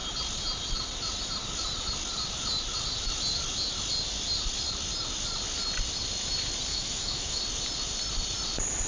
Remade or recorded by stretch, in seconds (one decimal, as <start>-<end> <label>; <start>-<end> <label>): 0.0-6.7 recorded; 6.7-7.4 remade; 7.4-8.9 recorded

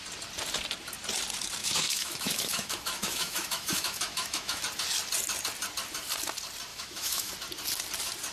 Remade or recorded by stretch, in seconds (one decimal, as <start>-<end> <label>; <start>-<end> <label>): 0.0-1.6 recorded; 1.6-4.6 remade; 4.6-6.7 recorded; 6.7-7.3 remade; 7.3-8.3 recorded

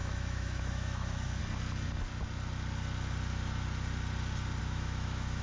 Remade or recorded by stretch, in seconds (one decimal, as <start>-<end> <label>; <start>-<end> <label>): 0.0-1.4 remade; 1.4-4.6 recorded; 4.6-5.4 remade